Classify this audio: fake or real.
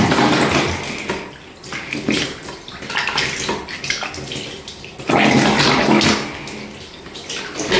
real